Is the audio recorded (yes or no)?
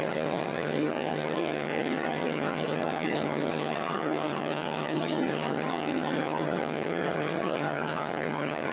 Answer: no